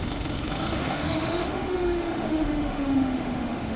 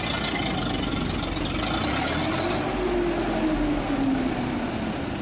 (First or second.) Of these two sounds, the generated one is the first